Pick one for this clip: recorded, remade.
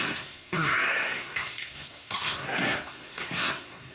remade